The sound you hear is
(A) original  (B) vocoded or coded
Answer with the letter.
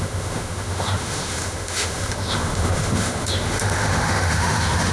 B